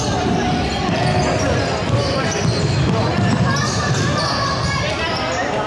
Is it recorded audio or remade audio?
recorded